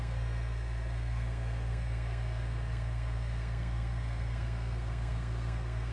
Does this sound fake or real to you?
fake